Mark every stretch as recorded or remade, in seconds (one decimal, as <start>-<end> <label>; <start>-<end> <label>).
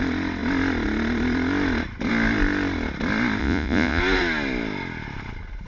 0.0-3.4 recorded; 3.4-4.0 remade; 4.0-5.7 recorded